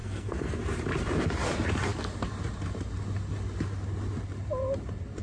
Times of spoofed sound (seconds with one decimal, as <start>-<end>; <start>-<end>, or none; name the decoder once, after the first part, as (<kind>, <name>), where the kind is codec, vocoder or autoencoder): 0.0-0.6 (codec, SNAC)